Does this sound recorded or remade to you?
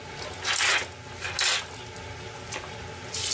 recorded